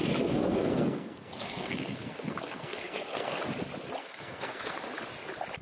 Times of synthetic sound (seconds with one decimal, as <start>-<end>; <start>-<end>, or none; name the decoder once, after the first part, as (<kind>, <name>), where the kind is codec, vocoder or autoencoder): 0.0-3.4 (codec, SNAC); 4.0-4.8